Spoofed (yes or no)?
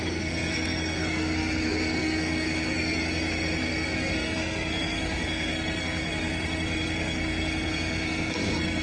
yes